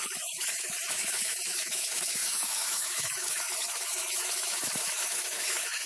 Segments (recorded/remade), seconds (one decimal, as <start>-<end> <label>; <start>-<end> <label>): 0.0-5.9 remade